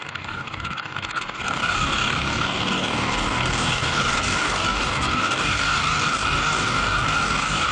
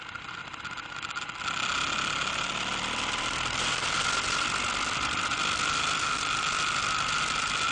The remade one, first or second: first